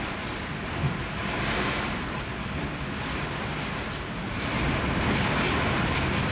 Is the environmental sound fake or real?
real